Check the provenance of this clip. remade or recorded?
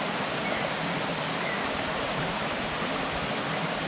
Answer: recorded